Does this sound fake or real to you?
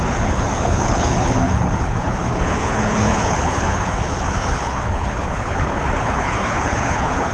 fake